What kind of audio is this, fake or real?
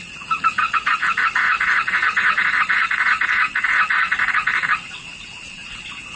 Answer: fake